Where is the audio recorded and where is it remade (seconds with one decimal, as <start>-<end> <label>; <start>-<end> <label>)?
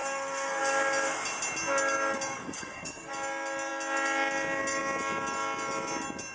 0.0-0.6 remade; 0.6-2.3 recorded; 2.3-3.1 remade; 3.1-6.3 recorded